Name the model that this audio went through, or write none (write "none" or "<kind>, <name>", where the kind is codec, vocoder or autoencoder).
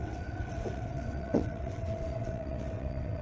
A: vocoder, WaveNeXt